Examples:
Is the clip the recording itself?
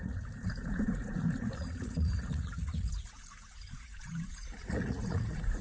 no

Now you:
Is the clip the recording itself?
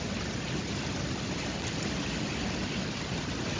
yes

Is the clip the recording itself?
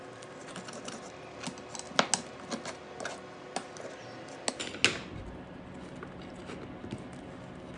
yes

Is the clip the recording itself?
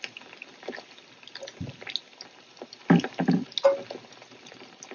yes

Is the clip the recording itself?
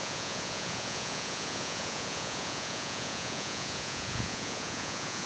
no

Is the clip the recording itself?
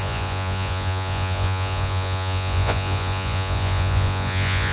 no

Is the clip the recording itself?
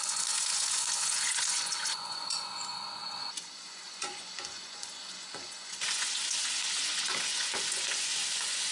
no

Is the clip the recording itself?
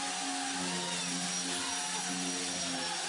yes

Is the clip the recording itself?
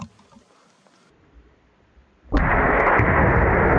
yes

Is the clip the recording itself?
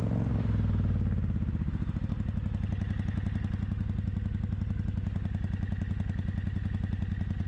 yes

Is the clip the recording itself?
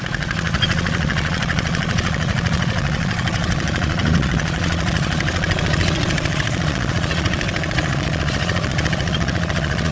no